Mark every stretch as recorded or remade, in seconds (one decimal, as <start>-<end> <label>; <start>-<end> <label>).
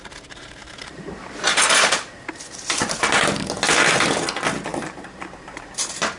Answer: 0.0-0.6 recorded; 0.6-3.2 remade; 3.2-4.7 recorded; 4.7-5.7 remade; 5.7-6.2 recorded